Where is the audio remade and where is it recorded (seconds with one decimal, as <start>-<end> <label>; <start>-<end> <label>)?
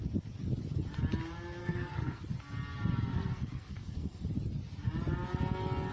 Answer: 0.0-1.6 recorded; 1.6-2.2 remade; 2.2-3.1 recorded; 3.1-4.2 remade; 4.2-5.9 recorded